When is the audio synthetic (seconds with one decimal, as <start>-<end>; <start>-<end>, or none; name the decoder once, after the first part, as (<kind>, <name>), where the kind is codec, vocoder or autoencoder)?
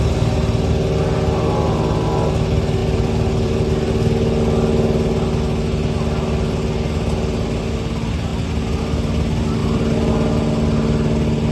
2.8-3.9 (vocoder, BigVGAN v2); 9.6-10.1